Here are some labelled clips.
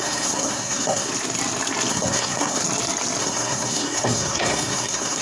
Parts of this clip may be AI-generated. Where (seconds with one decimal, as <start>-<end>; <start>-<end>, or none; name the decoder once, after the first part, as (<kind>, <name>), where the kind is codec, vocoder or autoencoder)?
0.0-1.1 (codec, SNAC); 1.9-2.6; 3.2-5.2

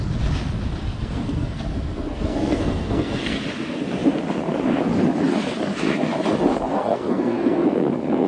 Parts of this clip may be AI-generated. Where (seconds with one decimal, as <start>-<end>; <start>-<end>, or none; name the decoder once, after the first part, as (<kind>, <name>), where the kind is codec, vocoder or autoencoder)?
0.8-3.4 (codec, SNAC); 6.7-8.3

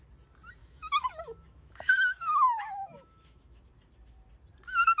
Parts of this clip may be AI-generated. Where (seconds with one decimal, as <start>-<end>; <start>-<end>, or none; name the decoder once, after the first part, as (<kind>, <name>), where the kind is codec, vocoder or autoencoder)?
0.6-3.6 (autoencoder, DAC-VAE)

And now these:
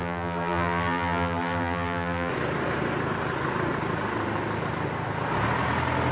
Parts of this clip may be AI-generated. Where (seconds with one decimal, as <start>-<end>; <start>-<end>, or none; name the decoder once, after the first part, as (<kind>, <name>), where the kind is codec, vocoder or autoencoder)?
0.0-2.3 (vocoder, BigVGAN v2)

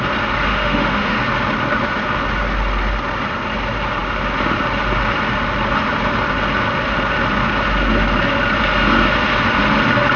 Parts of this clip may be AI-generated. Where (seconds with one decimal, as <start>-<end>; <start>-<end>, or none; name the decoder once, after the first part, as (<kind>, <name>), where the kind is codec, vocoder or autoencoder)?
0.5-1.2 (autoencoder, DAC-VAE)

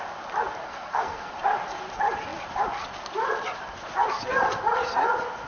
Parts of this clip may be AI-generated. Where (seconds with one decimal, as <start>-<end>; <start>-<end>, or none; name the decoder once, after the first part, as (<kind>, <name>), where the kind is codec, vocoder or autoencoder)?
0.6-1.3 (codec, SNAC)

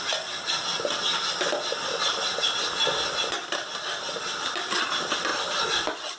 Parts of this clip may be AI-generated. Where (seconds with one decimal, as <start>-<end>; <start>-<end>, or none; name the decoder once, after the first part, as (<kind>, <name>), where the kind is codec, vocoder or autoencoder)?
none